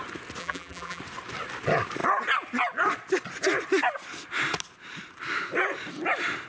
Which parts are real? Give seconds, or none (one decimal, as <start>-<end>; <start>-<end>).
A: 0.0-0.4; 1.0-6.5